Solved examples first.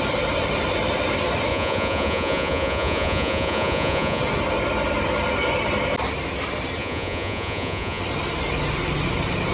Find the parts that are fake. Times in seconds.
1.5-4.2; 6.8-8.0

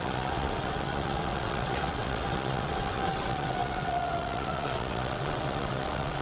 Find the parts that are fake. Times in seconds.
0.0-6.2

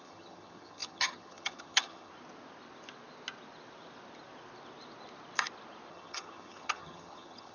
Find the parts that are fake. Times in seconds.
0.0-2.1; 5.9-7.5

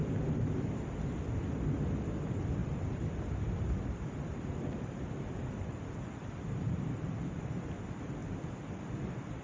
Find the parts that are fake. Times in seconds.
2.6-7.4

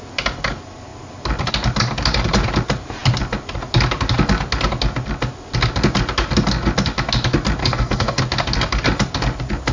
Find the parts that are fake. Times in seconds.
7.6-8.2

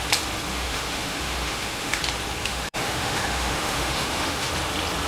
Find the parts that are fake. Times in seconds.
0.5-2.0; 2.4-4.5

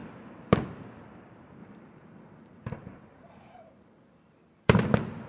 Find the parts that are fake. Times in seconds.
1.6-4.8